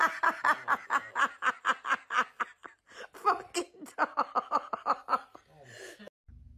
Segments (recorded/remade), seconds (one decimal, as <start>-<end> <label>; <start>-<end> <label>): 0.0-6.6 recorded